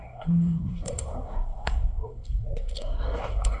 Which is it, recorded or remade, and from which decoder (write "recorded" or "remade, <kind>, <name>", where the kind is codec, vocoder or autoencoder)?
remade, codec, SNAC